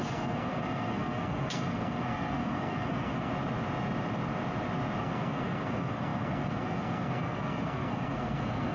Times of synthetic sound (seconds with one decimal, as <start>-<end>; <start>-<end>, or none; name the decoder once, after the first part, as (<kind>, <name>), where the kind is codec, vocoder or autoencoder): 0.0-3.3 (codec, SNAC); 5.0-8.7